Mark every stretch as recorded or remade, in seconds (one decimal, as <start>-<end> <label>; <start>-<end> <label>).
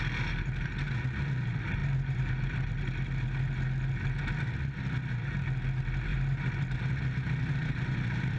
0.0-1.8 recorded; 1.8-2.3 remade; 2.3-6.1 recorded; 6.1-6.9 remade; 6.9-7.6 recorded; 7.6-8.4 remade